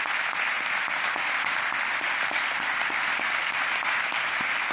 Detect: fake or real real